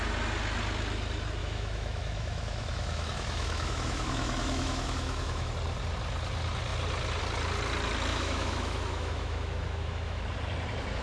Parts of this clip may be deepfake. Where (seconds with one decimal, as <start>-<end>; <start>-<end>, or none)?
1.4-5.5; 8.1-10.2

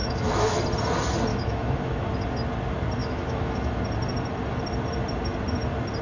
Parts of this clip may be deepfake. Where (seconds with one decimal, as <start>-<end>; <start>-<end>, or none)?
0.0-0.6; 1.3-2.0; 3.0-3.8

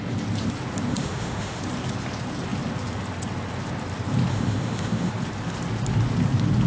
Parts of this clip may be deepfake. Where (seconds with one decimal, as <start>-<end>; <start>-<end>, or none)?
0.9-1.6; 4.3-5.1

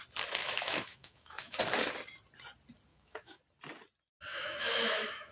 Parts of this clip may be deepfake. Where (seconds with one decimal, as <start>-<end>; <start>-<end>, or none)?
0.4-1.6; 2.9-3.4; 4.3-5.3

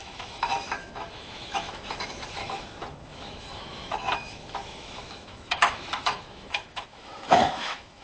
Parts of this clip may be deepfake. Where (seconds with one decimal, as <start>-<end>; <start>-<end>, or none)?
0.0-8.0

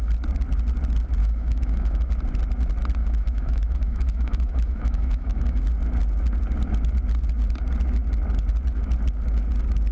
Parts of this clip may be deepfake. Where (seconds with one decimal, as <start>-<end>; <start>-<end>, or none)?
1.2-2.1; 3.0-5.6

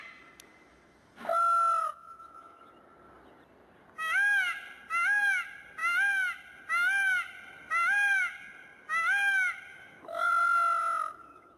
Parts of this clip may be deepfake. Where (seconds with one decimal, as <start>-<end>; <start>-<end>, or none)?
1.8-2.6; 9.7-10.3; 10.8-11.6